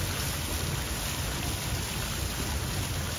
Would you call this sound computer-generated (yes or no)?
no